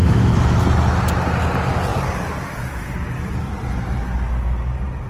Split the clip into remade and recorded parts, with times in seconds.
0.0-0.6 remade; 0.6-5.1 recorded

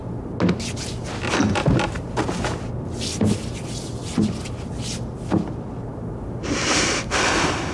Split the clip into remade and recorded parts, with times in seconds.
0.0-7.7 recorded

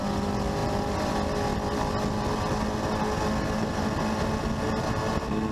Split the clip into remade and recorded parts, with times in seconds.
0.0-5.5 recorded

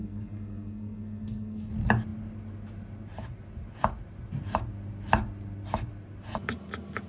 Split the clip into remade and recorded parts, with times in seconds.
0.0-1.7 remade; 1.7-7.1 recorded